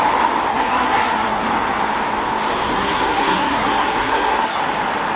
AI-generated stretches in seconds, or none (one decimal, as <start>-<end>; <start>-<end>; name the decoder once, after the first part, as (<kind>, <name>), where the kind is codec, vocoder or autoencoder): 0.5-1.4 (codec, SNAC); 2.7-4.6